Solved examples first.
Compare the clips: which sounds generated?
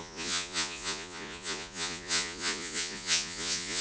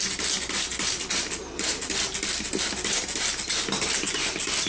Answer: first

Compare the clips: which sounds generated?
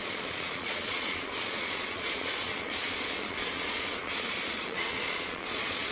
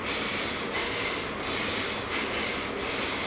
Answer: first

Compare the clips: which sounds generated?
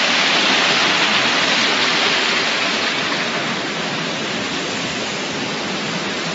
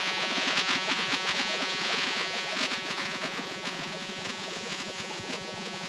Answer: second